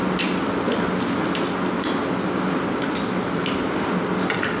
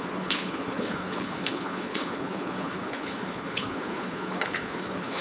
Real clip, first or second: first